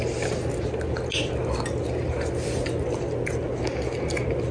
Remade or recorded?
recorded